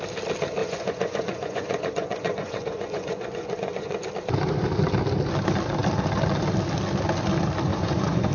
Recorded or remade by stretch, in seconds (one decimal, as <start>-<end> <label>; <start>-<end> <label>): 0.0-0.6 recorded; 0.6-4.0 remade; 4.0-7.7 recorded; 7.7-8.3 remade